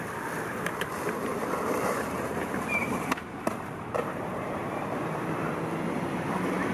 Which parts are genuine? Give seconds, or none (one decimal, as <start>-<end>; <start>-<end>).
0.0-1.3; 5.3-6.7